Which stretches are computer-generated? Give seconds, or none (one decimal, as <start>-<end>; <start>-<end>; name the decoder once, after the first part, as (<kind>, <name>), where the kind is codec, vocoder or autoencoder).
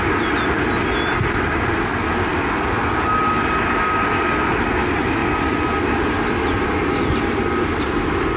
none